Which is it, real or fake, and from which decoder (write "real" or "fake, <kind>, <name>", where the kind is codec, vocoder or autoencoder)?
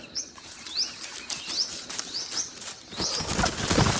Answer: real